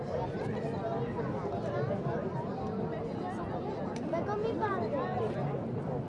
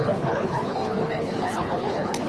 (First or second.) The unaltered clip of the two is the first